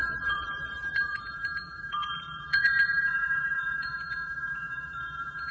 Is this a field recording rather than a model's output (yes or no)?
no